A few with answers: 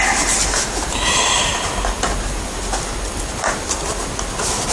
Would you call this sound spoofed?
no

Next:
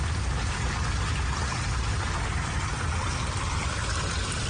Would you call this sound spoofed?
no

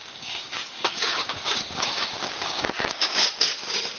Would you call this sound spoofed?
yes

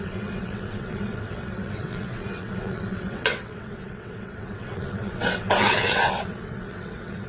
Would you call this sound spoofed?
yes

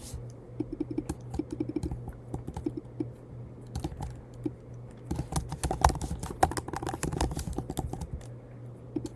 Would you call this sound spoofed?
no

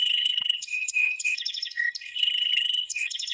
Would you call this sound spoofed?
yes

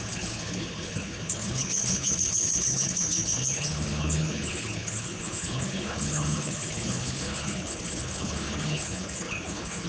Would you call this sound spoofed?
yes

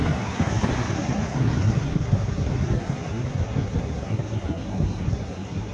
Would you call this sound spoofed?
yes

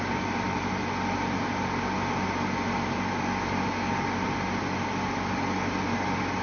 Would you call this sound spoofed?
no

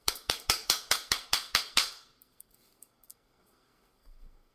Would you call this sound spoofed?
yes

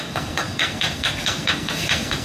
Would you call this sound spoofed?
yes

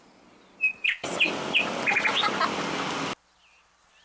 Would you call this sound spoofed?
no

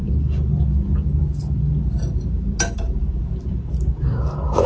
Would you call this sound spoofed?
no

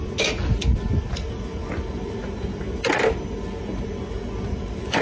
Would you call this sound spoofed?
no